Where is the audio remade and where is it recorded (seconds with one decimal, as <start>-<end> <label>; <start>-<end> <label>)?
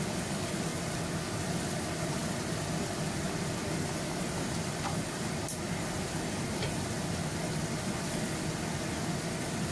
0.0-0.7 recorded; 0.7-1.6 remade; 1.6-2.2 recorded; 2.2-7.3 remade; 7.3-9.7 recorded